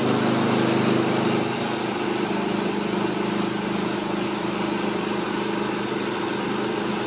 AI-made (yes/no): no